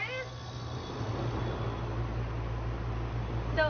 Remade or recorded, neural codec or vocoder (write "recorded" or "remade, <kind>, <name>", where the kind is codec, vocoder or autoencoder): recorded